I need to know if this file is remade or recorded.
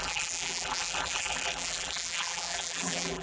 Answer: remade